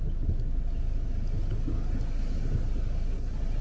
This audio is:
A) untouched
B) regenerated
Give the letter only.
A